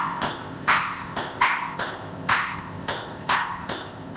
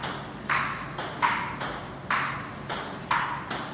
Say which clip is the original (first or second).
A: second